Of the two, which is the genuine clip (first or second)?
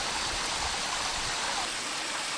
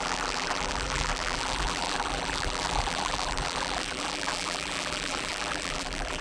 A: first